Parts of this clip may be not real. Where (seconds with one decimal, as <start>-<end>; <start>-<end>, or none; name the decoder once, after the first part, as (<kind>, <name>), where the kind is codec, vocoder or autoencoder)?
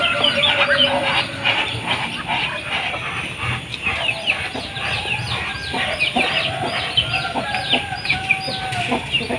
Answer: 5.5-6.4 (vocoder, BigVGAN v2)